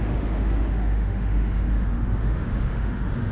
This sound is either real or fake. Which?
fake